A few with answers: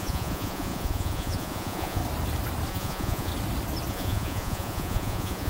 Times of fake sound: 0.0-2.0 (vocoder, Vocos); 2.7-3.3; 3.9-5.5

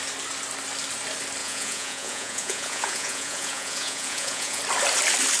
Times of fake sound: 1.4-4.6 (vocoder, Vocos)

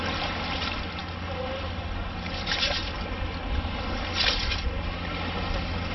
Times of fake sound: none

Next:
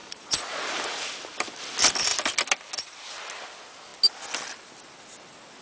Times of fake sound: 0.0-0.6 (vocoder, Vocos)

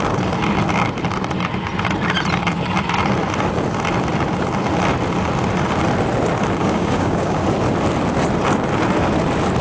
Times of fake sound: 6.6-7.4 (codec, DAC)

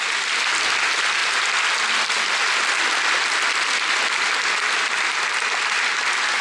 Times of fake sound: none